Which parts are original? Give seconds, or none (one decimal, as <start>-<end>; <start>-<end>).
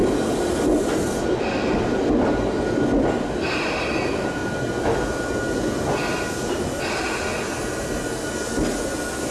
0.0-3.1; 4.4-9.3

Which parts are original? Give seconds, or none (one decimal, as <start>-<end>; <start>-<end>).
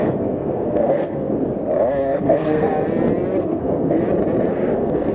1.4-2.1; 2.7-3.4; 4.0-4.5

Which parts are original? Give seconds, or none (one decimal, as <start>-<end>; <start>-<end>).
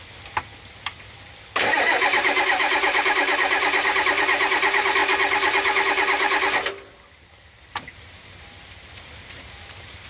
5.0-7.3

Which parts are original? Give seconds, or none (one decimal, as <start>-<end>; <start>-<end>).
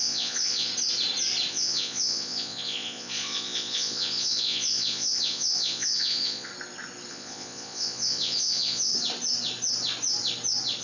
0.7-1.5; 6.5-7.1; 8.9-10.8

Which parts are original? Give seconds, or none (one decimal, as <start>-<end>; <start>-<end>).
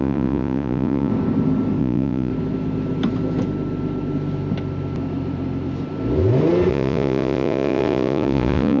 1.1-1.8; 2.3-6.7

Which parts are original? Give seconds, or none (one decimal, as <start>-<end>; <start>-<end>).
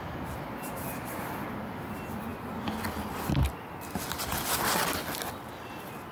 0.0-6.1